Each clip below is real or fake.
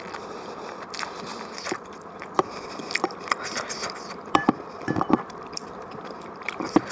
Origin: fake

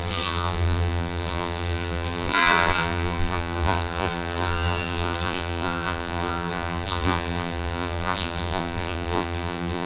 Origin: fake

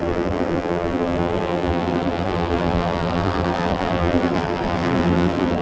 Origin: fake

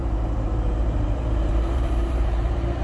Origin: fake